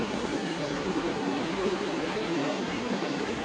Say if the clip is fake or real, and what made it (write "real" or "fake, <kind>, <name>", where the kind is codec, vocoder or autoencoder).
fake, codec, SNAC